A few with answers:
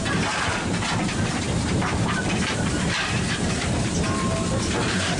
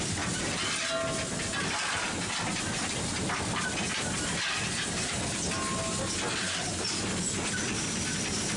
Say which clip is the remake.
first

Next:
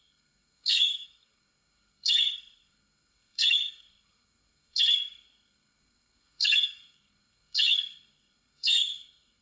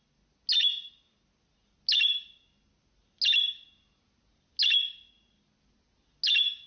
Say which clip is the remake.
first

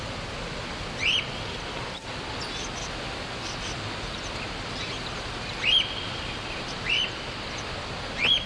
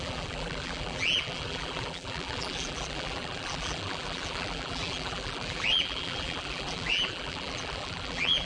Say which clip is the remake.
second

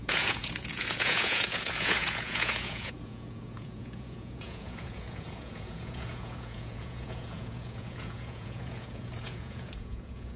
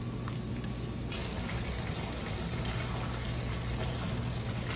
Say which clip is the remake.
first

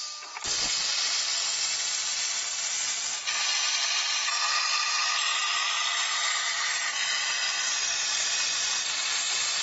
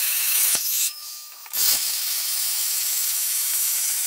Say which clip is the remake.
second